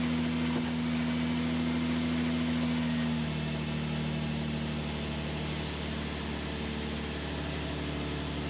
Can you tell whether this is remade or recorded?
recorded